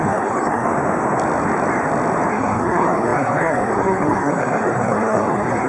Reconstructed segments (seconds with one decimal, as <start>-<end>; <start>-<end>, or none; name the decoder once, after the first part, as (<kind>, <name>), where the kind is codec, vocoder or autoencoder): 0.0-0.7 (codec, SNAC); 2.3-5.7